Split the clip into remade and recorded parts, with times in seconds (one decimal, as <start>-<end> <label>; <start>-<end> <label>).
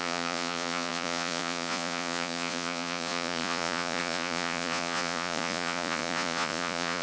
0.0-7.0 remade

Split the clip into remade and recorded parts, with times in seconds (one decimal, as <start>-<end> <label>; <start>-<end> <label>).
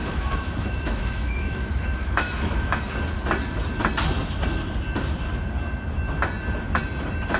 0.0-2.8 remade; 2.8-7.4 recorded